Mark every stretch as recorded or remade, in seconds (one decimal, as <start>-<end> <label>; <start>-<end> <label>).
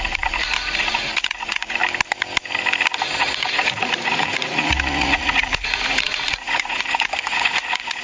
0.0-1.8 remade; 1.8-3.2 recorded; 3.2-8.0 remade